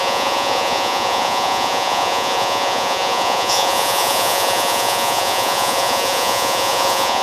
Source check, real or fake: fake